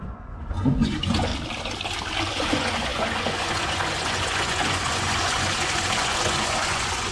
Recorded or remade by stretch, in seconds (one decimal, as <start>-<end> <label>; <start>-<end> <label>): 0.0-1.3 remade; 1.3-2.3 recorded; 2.3-7.1 remade